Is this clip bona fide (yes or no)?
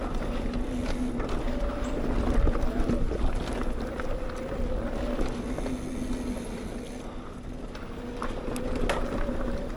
yes